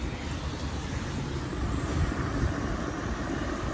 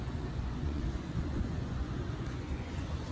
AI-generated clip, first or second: second